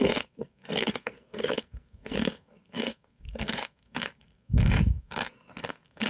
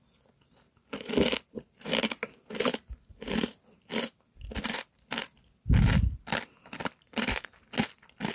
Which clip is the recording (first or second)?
second